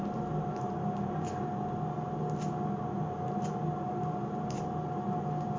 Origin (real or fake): real